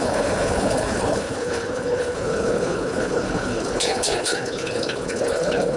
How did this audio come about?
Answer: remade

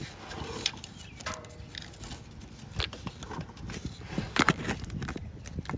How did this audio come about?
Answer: recorded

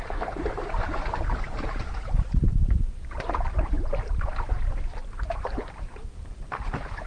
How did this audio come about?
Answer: remade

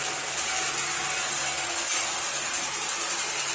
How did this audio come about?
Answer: recorded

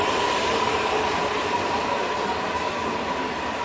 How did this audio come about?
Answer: remade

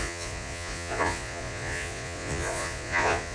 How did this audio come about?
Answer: remade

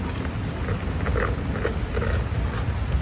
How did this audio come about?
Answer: recorded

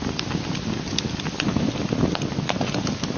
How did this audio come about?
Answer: recorded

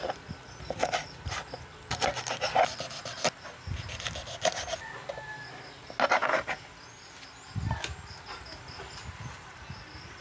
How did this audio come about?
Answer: recorded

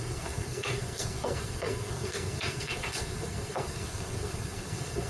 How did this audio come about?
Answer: remade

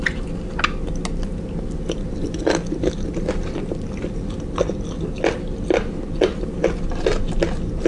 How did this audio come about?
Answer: recorded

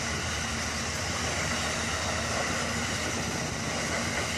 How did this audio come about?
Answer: recorded